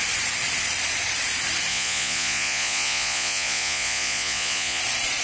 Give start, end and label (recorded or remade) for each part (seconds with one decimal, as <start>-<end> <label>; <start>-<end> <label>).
0.0-1.7 recorded; 1.7-4.8 remade; 4.8-5.2 recorded